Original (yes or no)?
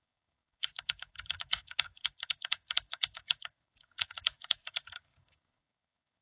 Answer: no